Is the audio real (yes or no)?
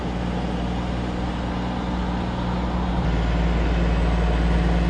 yes